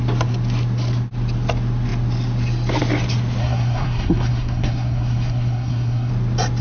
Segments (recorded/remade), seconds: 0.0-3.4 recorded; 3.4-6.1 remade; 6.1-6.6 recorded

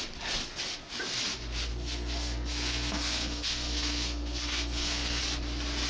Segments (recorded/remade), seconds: 0.0-1.7 recorded; 1.7-5.2 remade; 5.2-5.9 recorded